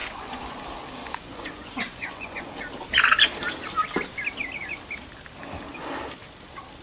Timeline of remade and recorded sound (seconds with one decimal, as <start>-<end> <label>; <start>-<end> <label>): 0.0-0.6 remade; 0.6-1.0 recorded; 1.0-2.4 remade; 2.4-6.8 recorded